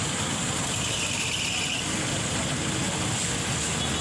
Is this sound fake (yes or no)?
no